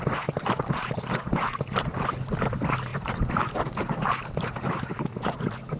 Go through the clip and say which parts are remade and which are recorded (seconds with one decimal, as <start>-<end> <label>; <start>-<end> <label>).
0.0-5.8 recorded